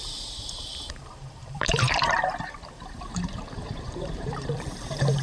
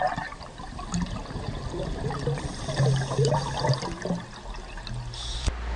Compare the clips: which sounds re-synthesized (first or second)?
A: first